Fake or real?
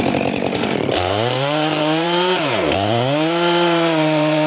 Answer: fake